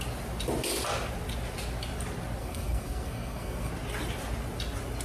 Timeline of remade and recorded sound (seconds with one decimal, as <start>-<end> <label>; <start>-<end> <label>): 0.0-2.4 recorded; 2.4-3.7 remade; 3.7-5.0 recorded